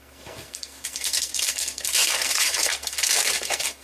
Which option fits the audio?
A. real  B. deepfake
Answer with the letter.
B